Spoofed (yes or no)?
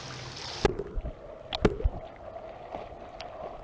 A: no